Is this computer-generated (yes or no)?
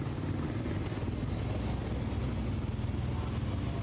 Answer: no